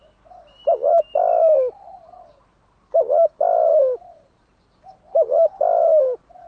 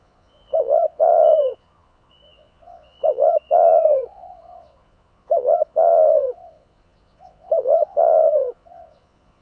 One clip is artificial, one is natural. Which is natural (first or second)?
first